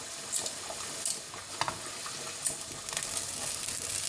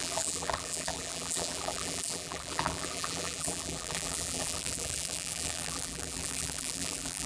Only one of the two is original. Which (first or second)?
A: first